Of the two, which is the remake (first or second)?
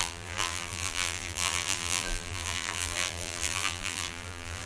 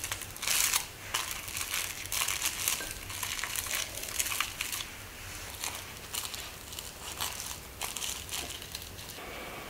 first